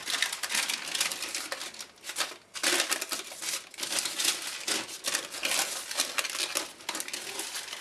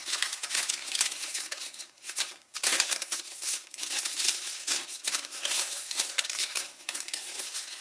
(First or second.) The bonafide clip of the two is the first